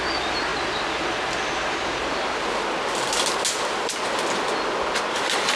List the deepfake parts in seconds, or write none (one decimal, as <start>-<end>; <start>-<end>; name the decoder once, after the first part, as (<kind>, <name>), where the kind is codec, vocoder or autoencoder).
none

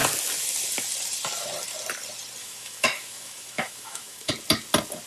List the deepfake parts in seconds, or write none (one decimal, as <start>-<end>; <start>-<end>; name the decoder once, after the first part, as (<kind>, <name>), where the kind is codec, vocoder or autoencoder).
2.4-4.3 (autoencoder, DAC-VAE)

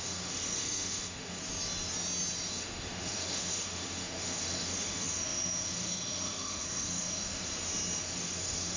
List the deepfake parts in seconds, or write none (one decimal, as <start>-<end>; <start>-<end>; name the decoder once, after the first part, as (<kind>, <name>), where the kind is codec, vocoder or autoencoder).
0.0-1.4 (autoencoder, DAC-VAE); 2.5-7.5; 8.0-8.8

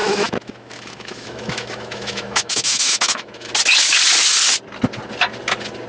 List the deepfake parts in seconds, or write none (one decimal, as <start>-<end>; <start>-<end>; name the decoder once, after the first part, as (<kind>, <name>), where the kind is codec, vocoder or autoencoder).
0.0-3.5 (autoencoder, DAC-VAE)

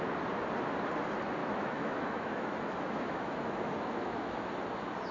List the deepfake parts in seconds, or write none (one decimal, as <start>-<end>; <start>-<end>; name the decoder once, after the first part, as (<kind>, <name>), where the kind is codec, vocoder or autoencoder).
1.4-4.5 (autoencoder, DAC-VAE)

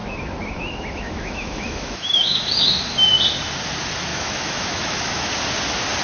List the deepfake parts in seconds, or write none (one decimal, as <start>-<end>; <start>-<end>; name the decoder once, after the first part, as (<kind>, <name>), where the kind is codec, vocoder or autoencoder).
0.0-2.4 (autoencoder, DAC-VAE); 4.1-5.3

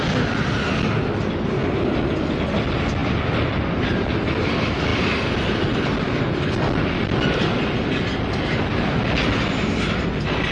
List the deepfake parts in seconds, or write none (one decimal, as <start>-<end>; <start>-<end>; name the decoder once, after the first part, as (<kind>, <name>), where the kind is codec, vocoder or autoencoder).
none

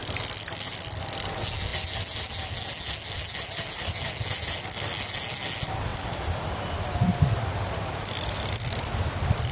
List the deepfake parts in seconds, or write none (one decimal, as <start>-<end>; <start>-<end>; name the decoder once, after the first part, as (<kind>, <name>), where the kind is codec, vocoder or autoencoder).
none